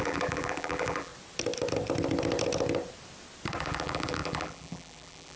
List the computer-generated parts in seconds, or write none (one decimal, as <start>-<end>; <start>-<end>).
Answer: 0.0-1.1; 3.6-5.4